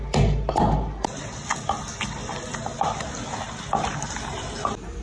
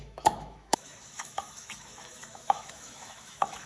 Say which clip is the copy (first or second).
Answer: second